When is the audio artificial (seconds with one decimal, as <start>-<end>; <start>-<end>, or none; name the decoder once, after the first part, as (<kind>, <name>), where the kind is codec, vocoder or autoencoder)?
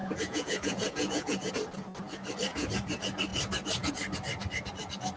0.0-1.5 (vocoder, Vocos)